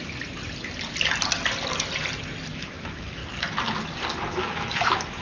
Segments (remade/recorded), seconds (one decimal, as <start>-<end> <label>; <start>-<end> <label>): 0.0-2.5 recorded; 2.5-3.2 remade; 3.2-4.3 recorded; 4.3-5.2 remade